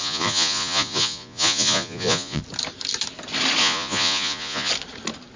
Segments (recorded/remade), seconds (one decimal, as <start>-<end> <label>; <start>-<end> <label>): 0.0-2.4 remade; 2.4-3.6 recorded; 3.6-4.7 remade; 4.7-5.4 recorded